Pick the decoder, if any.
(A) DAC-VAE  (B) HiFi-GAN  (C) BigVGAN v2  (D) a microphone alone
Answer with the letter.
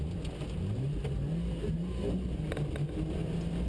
D